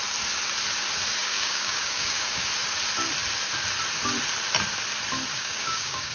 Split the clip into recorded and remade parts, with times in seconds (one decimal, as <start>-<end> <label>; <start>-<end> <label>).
0.0-1.2 recorded; 1.2-2.5 remade; 2.5-5.3 recorded; 5.3-6.1 remade